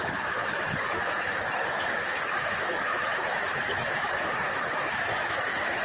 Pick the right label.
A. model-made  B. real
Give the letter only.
A